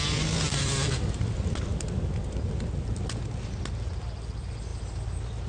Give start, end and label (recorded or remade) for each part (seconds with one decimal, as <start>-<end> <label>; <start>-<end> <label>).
0.0-5.5 recorded